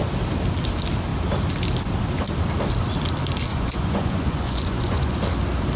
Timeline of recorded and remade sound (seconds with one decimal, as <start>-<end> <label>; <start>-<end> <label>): 0.0-3.5 recorded; 3.5-5.2 remade; 5.2-5.8 recorded